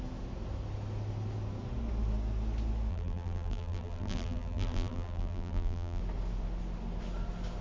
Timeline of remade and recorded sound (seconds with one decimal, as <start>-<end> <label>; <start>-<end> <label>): 0.0-2.9 recorded; 2.9-6.0 remade; 6.0-7.6 recorded